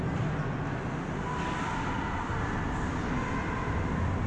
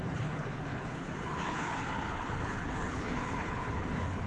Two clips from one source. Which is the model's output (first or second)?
second